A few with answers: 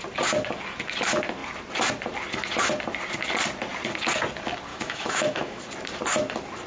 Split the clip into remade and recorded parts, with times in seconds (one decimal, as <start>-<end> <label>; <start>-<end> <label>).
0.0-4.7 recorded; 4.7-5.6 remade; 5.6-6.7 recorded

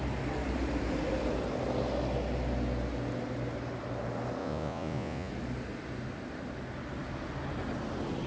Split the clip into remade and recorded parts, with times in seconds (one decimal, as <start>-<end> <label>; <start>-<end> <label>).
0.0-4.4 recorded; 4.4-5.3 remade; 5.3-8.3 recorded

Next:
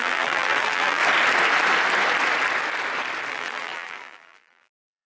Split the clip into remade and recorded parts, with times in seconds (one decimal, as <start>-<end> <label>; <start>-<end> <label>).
0.0-1.0 remade; 1.0-3.3 recorded; 3.3-5.1 remade

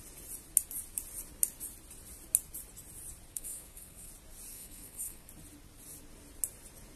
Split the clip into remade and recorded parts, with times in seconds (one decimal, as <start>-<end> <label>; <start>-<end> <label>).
0.0-3.3 recorded; 3.3-4.1 remade; 4.1-4.5 recorded; 4.5-5.3 remade; 5.3-7.0 recorded

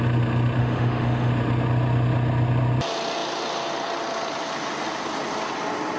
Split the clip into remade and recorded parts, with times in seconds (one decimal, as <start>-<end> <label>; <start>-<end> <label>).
0.0-0.6 recorded; 0.6-1.3 remade; 1.3-6.0 recorded

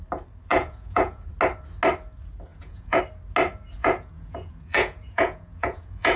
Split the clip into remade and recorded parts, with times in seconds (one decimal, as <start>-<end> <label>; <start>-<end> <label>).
0.0-0.5 recorded; 0.5-1.3 remade; 1.3-2.5 recorded; 2.5-3.0 remade; 3.0-3.8 recorded; 3.8-6.2 remade